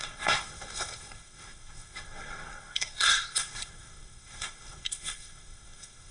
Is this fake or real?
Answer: fake